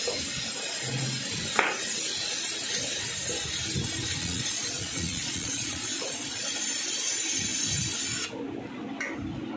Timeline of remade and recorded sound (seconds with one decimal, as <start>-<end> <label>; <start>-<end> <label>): 0.0-4.2 recorded; 4.2-6.5 remade; 6.5-9.6 recorded